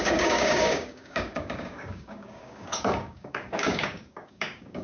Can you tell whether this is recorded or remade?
remade